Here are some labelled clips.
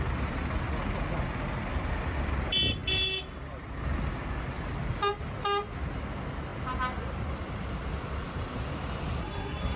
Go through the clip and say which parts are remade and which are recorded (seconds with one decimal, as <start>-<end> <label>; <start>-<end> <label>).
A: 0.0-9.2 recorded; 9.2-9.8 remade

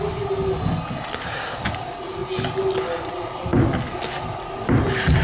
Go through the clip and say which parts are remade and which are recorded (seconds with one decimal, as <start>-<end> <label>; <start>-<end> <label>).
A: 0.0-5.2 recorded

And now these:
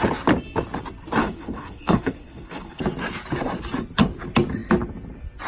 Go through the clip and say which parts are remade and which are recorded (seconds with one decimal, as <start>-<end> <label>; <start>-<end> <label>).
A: 0.0-1.2 recorded; 1.2-2.8 remade; 2.8-5.5 recorded

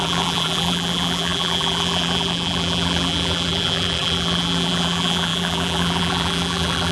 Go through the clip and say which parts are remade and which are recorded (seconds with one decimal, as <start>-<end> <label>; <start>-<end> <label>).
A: 0.0-6.9 remade

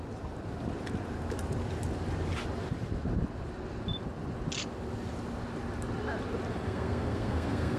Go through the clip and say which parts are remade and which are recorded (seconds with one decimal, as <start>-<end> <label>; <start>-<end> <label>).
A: 0.0-6.5 recorded; 6.5-7.8 remade

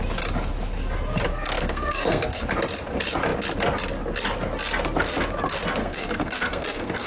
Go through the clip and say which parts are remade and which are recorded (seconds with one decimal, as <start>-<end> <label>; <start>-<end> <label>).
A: 0.0-1.3 recorded; 1.3-2.4 remade; 2.4-5.8 recorded; 5.8-7.1 remade

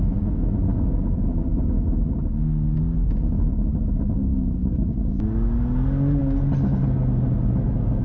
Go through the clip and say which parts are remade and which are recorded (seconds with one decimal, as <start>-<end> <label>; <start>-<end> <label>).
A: 0.0-4.3 recorded; 4.3-5.2 remade; 5.2-8.0 recorded

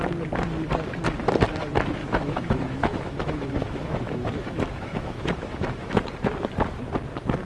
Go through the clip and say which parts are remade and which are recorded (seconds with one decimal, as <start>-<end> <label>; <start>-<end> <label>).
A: 0.0-2.0 recorded; 2.0-6.0 remade; 6.0-7.4 recorded